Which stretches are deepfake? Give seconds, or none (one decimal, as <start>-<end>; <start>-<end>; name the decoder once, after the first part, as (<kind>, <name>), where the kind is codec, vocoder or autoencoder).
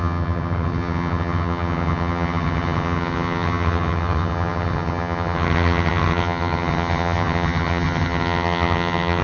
0.0-9.2 (vocoder, HiFi-GAN)